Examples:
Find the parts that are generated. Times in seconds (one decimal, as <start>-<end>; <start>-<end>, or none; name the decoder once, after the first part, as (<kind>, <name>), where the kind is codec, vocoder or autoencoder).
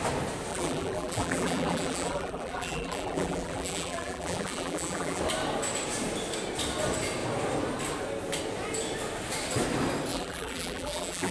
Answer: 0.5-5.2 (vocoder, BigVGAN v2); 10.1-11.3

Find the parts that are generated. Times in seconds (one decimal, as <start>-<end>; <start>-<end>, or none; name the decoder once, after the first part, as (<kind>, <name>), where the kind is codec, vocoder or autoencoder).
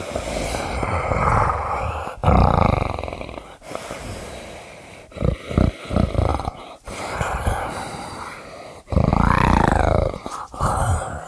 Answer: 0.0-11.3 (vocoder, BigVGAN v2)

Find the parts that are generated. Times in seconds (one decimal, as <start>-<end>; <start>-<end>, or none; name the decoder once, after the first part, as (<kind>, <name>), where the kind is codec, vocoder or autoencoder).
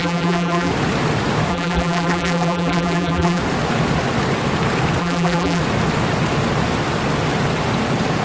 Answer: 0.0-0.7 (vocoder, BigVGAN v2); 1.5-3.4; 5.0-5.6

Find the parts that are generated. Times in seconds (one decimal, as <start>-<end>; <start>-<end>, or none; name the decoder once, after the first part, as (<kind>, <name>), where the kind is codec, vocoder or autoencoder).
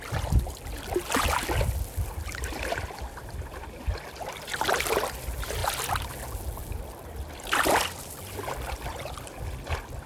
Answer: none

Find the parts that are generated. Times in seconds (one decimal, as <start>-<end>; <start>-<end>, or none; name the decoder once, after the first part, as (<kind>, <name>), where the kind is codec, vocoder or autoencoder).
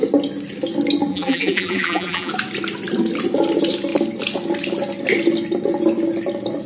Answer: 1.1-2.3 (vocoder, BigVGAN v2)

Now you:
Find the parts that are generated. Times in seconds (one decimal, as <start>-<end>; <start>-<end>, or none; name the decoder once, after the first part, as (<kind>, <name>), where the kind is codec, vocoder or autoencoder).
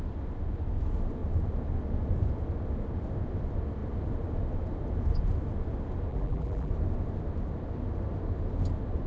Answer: 6.1-6.7 (vocoder, BigVGAN v2)